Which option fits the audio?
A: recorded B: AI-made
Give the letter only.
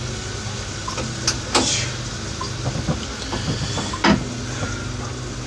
A